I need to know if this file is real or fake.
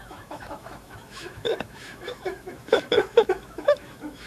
fake